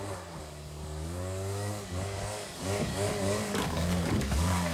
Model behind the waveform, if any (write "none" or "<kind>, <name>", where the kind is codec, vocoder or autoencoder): codec, DAC